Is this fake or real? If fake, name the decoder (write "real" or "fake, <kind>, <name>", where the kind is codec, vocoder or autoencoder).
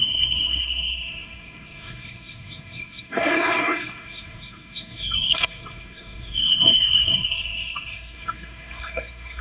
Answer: fake, codec, SNAC